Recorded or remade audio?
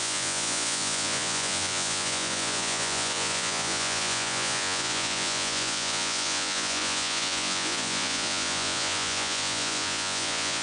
remade